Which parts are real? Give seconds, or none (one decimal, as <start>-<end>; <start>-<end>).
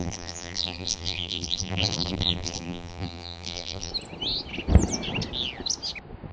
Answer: 3.9-6.3